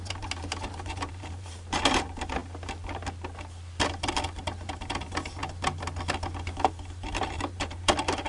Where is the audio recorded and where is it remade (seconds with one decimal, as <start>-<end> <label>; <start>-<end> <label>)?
0.0-2.4 remade; 2.4-4.1 recorded; 4.1-5.4 remade; 5.4-6.7 recorded; 6.7-8.3 remade